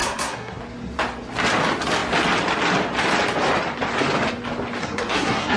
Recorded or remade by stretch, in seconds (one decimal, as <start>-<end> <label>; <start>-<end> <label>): 0.0-0.6 remade; 0.6-4.8 recorded; 4.8-5.6 remade